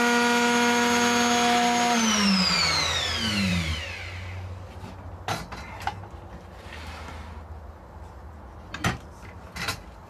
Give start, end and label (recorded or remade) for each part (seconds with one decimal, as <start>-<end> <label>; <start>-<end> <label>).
0.0-10.1 recorded